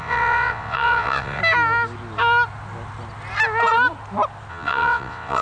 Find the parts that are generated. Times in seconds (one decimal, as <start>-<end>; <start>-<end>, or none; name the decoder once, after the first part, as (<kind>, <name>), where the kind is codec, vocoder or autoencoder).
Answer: 0.0-1.4 (vocoder, WaveNeXt); 4.5-5.4